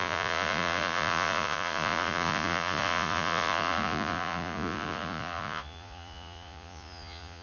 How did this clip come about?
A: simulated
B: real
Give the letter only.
A